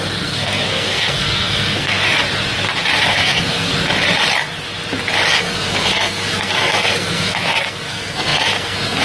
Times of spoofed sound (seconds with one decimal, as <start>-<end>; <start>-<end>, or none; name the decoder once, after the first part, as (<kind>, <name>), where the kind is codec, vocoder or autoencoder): 0.0-2.0 (codec, SNAC); 3.1-3.7; 5.4-9.0